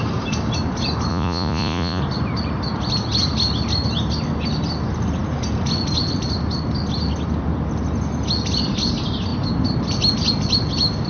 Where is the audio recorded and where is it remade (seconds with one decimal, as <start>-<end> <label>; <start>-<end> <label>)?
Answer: 0.0-1.1 recorded; 1.1-2.0 remade; 2.0-11.1 recorded

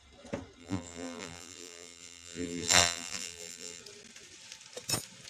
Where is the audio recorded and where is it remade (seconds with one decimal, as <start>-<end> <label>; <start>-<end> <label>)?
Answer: 0.0-0.6 recorded; 0.6-3.8 remade; 3.8-5.3 recorded